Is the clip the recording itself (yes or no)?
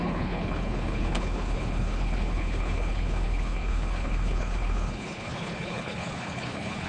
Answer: no